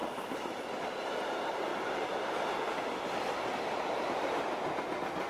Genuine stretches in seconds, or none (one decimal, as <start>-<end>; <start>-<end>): 0.6-5.3